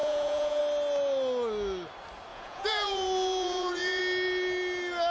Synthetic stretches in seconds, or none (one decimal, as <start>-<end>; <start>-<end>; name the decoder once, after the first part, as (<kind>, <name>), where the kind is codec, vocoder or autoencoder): 0.0-0.6 (vocoder, Vocos); 2.3-4.0